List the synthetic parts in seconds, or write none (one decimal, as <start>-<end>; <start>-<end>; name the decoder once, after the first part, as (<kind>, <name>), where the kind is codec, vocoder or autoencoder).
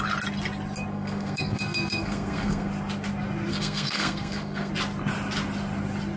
0.9-2.7 (codec, SNAC); 3.5-4.7